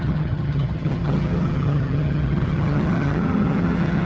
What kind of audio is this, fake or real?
fake